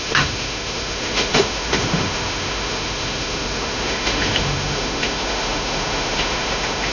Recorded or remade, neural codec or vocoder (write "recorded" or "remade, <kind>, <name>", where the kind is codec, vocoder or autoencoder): remade, autoencoder, DAC-VAE